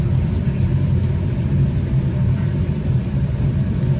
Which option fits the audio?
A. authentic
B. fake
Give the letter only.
B